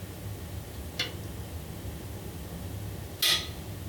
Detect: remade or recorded recorded